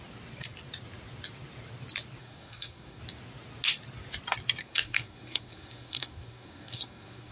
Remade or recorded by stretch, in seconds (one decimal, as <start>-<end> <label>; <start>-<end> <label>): 0.0-2.2 recorded; 2.2-3.0 remade; 3.0-4.6 recorded; 4.6-7.3 remade